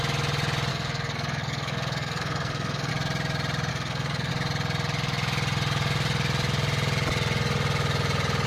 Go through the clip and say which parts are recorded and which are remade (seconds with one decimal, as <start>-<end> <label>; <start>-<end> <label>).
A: 0.0-0.7 recorded; 0.7-2.9 remade; 2.9-3.7 recorded; 3.7-4.3 remade; 4.3-8.5 recorded